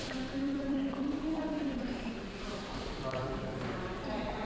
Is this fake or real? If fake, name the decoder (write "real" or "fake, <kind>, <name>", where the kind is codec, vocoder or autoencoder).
fake, vocoder, BigVGAN v2